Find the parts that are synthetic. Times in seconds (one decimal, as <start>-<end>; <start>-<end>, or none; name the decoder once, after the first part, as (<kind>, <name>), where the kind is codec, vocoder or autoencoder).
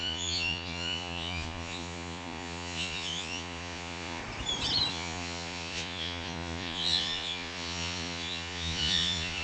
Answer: 0.0-4.2 (vocoder, Vocos); 4.9-9.4